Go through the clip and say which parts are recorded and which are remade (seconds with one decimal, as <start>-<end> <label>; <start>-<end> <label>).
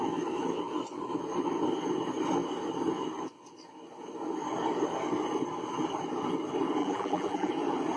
0.0-6.8 recorded; 6.8-7.5 remade; 7.5-8.0 recorded